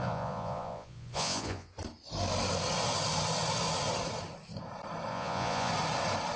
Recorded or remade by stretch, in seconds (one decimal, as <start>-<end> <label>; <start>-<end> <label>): 0.0-1.7 remade; 1.7-5.1 recorded; 5.1-5.7 remade; 5.7-6.4 recorded

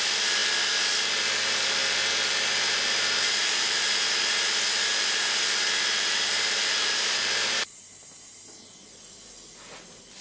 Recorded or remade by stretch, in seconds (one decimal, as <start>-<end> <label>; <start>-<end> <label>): 0.0-10.2 recorded